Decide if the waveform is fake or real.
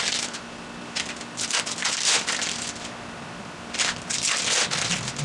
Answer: real